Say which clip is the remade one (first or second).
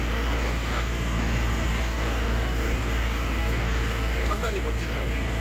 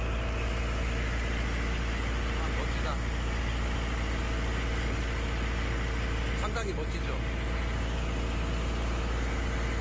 first